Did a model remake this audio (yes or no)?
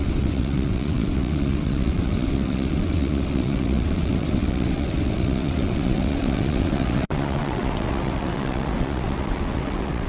yes